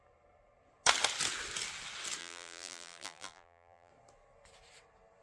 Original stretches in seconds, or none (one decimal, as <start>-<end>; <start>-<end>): 0.0-2.2; 3.9-5.2